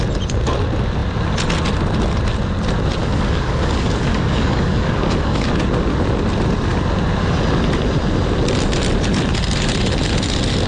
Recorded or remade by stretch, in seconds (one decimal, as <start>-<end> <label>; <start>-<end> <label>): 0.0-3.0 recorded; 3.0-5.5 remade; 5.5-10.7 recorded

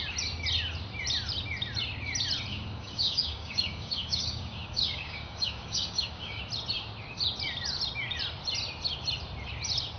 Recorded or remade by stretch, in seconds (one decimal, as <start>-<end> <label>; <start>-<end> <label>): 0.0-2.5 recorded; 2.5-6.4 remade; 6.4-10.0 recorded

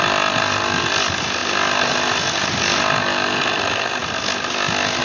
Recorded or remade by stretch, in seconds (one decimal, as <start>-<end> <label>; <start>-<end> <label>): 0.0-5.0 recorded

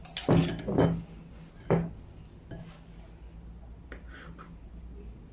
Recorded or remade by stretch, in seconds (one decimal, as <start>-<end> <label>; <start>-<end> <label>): 0.0-5.3 recorded

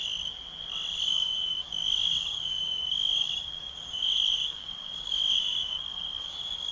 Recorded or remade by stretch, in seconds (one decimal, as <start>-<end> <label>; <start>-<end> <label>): 0.0-1.1 recorded; 1.1-6.7 remade

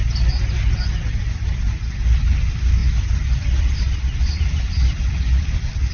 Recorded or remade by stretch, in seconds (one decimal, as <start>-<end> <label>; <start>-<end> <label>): 0.0-5.9 recorded

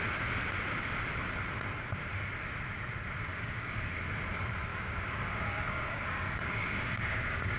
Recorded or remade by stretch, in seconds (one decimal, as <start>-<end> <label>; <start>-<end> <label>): 0.0-3.3 recorded; 3.3-3.9 remade; 3.9-4.7 recorded; 4.7-7.6 remade

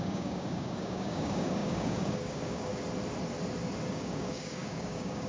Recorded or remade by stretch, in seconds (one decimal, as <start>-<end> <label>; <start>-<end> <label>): 0.0-2.7 remade; 2.7-3.9 recorded; 3.9-5.3 remade